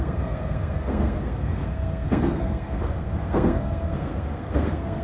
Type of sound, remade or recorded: remade